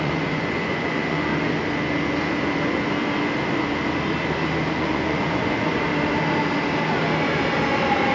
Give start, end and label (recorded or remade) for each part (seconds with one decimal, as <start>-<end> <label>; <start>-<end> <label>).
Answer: 0.0-1.3 remade; 1.3-4.8 recorded; 4.8-5.9 remade; 5.9-8.1 recorded